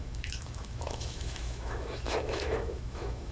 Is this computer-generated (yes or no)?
yes